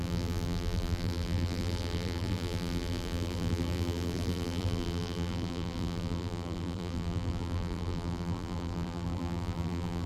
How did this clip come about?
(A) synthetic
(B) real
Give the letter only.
A